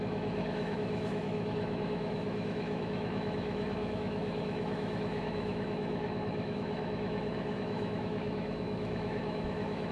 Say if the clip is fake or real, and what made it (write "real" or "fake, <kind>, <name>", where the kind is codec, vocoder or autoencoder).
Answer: fake, autoencoder, DAC-VAE